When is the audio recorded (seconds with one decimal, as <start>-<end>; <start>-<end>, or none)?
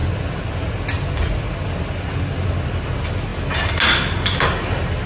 0.0-5.1